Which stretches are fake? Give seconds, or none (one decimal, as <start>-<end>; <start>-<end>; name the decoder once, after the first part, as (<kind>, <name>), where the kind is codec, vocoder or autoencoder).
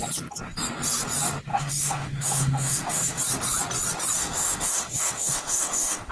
1.5-3.2 (autoencoder, DAC-VAE); 4.2-6.1